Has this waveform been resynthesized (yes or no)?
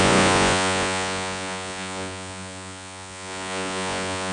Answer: yes